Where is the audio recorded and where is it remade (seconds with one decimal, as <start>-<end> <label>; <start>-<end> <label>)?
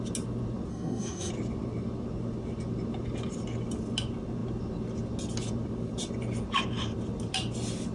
0.0-0.7 recorded; 0.7-1.3 remade; 1.3-7.9 recorded